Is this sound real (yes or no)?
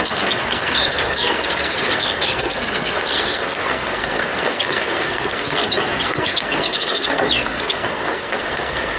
no